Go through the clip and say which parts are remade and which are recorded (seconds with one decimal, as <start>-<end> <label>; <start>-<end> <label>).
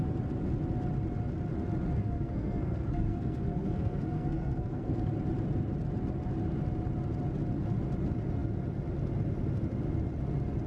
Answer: 0.0-2.0 recorded; 2.0-5.0 remade; 5.0-10.7 recorded